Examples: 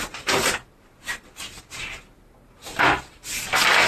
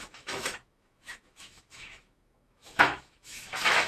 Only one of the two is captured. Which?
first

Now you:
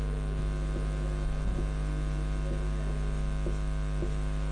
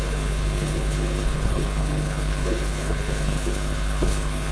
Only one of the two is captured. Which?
first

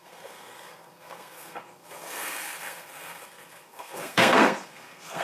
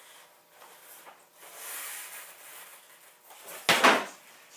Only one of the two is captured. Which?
second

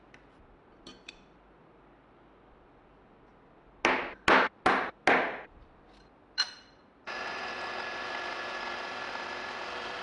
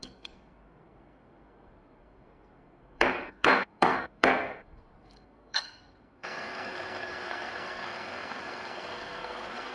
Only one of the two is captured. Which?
first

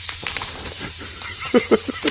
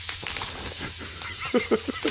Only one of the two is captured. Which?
second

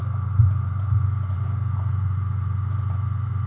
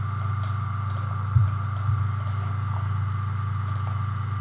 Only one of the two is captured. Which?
second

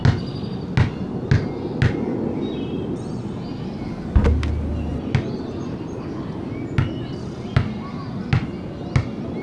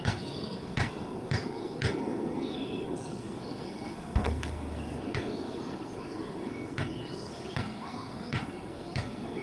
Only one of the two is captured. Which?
first